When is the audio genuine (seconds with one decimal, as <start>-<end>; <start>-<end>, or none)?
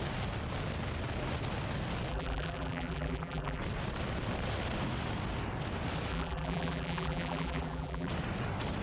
0.0-2.1; 3.6-6.1; 8.1-8.8